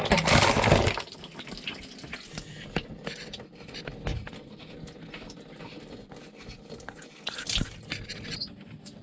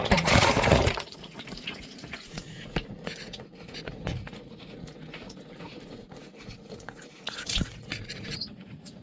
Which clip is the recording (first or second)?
first